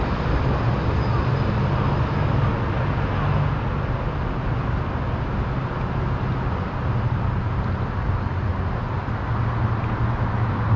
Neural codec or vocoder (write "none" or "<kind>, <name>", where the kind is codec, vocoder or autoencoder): none